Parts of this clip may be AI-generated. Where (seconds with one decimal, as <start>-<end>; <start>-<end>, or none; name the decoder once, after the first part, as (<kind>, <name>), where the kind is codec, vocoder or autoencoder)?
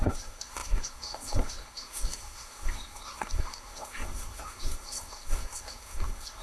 0.0-6.4 (codec, SNAC)